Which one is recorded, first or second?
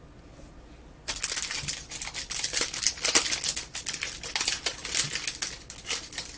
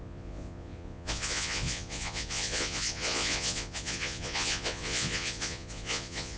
first